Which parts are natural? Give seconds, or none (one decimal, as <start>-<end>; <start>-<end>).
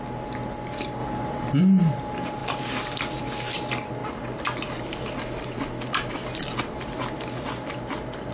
0.0-1.0; 1.6-8.3